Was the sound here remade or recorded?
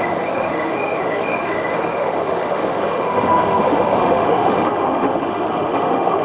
remade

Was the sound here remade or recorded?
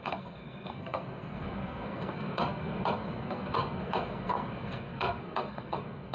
remade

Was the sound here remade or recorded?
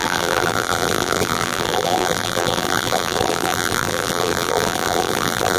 remade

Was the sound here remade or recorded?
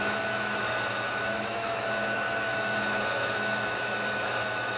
remade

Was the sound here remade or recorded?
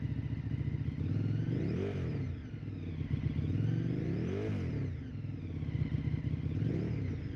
recorded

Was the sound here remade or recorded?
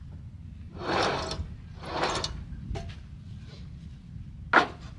recorded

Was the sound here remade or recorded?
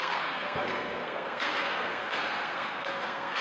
remade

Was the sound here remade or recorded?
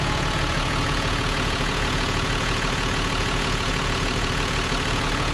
remade